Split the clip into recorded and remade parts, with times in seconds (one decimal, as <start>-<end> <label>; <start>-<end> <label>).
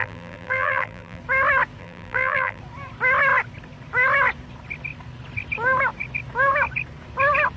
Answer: 0.0-1.2 remade; 1.2-1.8 recorded; 1.8-2.6 remade; 2.6-7.6 recorded